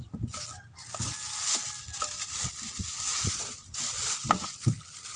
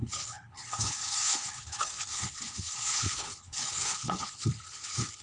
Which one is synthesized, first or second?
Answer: second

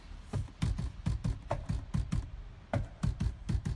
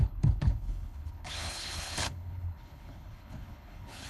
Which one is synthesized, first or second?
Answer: second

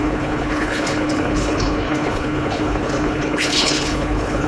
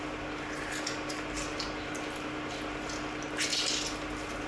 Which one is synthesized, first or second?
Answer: first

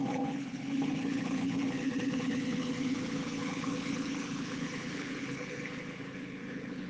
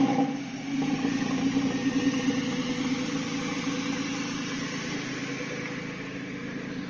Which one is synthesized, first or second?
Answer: first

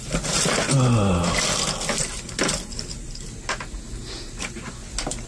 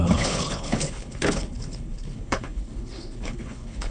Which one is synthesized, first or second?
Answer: second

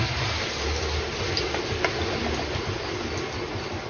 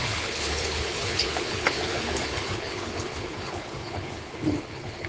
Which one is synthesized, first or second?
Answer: second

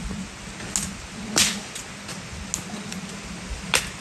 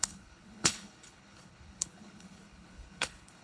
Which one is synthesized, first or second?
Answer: second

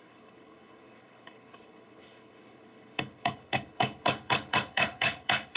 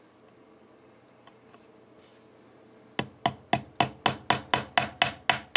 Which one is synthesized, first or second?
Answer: first